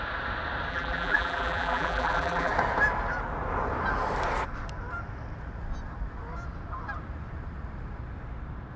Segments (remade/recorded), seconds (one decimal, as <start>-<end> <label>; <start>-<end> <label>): 0.0-0.7 recorded; 0.7-2.5 remade; 2.5-8.8 recorded